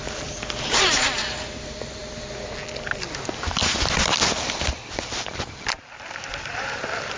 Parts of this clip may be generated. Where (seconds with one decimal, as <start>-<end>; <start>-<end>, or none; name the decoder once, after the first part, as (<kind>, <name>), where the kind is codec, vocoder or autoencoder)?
0.0-2.0 (vocoder, BigVGAN v2); 6.3-7.2